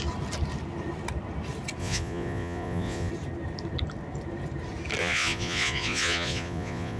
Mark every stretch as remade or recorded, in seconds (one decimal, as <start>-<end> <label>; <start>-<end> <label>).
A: 0.0-1.8 recorded; 1.8-3.1 remade; 3.1-5.0 recorded; 5.0-7.0 remade